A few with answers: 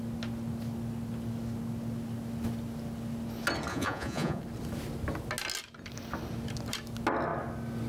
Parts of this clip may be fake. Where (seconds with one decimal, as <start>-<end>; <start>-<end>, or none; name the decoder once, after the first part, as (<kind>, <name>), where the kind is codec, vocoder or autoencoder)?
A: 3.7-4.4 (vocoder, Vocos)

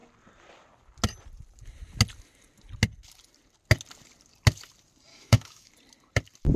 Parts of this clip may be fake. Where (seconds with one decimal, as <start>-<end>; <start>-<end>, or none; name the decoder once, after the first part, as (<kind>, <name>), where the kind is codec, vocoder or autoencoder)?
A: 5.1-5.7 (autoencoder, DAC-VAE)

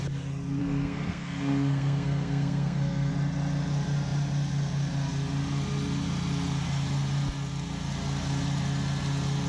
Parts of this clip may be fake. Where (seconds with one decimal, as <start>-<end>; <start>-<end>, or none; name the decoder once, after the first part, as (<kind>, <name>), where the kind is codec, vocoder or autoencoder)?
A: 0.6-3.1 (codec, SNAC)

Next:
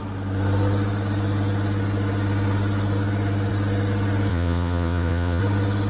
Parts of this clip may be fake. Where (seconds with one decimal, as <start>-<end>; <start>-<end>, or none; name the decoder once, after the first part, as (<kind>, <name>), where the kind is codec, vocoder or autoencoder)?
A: 4.3-5.4 (vocoder, Vocos)